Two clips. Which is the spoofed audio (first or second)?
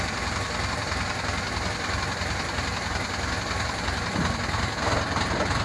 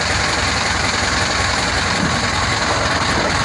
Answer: second